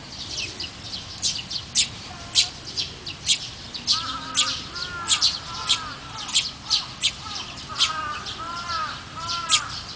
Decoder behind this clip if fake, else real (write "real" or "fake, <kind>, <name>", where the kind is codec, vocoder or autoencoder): real